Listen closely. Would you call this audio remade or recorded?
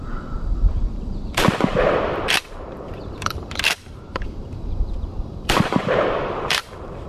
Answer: remade